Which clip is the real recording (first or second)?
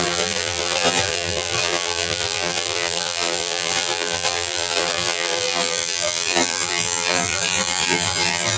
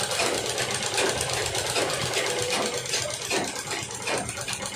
second